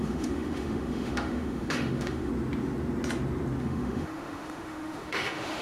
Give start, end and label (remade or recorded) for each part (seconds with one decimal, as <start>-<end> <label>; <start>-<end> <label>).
0.0-2.3 remade; 2.3-3.6 recorded; 3.6-5.6 remade